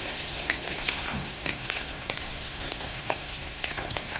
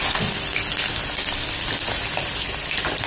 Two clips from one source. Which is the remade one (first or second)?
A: first